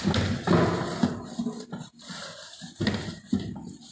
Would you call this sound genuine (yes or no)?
yes